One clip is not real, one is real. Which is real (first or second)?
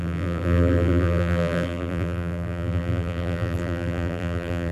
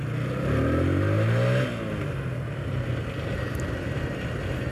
second